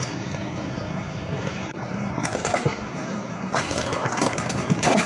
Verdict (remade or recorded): remade